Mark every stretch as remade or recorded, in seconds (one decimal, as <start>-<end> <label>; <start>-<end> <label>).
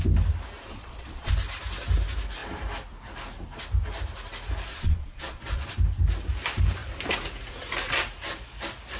0.0-0.7 recorded; 0.7-1.3 remade; 1.3-4.7 recorded; 4.7-5.7 remade; 5.7-9.0 recorded